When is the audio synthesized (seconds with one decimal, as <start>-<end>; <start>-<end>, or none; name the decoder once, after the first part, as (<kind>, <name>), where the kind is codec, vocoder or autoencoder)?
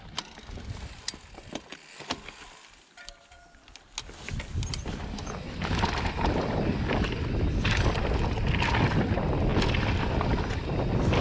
none